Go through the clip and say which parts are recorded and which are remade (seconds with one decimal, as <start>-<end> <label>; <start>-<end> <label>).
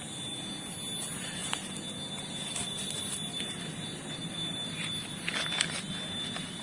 0.0-6.6 recorded